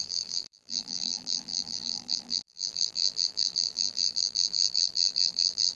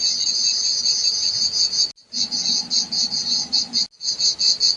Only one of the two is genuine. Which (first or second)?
second